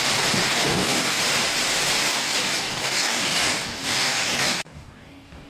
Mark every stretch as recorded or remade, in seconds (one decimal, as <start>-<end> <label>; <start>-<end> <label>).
0.0-0.5 recorded; 0.5-1.2 remade; 1.2-2.1 recorded; 2.1-5.5 remade